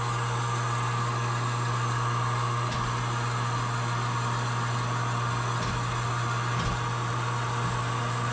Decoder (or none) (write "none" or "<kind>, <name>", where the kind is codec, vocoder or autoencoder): none